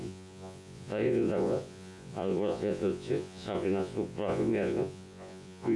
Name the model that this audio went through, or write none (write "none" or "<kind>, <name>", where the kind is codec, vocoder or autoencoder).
vocoder, Vocos